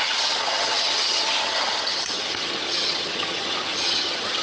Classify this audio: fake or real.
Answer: fake